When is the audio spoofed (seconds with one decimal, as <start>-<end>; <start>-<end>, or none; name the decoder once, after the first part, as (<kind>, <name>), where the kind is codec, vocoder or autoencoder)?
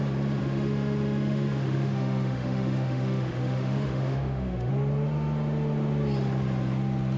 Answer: 0.4-4.7 (autoencoder, DAC-VAE)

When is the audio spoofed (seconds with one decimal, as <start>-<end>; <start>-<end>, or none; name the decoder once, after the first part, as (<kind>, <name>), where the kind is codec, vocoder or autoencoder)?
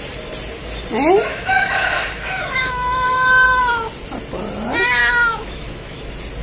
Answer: 1.3-3.6 (autoencoder, DAC-VAE); 5.0-6.0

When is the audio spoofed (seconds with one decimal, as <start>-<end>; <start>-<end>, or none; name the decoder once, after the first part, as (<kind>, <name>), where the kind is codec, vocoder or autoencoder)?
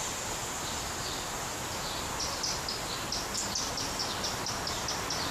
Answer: none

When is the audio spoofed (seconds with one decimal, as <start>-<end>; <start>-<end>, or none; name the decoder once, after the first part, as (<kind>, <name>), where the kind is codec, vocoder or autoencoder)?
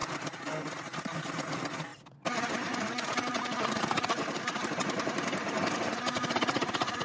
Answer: none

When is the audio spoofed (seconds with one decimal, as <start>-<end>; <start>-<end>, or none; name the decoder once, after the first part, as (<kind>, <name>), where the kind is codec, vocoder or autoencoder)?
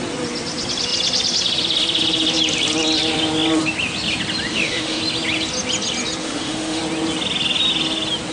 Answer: 4.5-5.0 (autoencoder, DAC-VAE); 6.2-6.8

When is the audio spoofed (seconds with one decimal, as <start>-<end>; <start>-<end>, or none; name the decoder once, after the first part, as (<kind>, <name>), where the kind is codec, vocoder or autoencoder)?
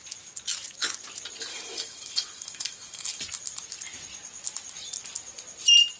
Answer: 1.5-3.2 (autoencoder, DAC-VAE)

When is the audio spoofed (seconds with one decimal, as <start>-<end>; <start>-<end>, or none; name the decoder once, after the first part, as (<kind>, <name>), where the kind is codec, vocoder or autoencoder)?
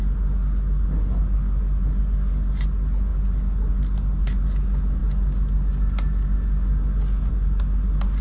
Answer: none